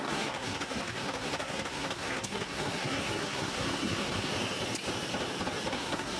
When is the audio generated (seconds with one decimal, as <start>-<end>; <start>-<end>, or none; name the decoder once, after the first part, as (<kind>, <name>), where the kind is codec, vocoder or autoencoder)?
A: 0.0-4.3 (codec, SNAC); 5.7-6.2